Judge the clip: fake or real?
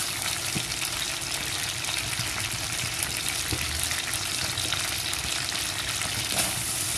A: fake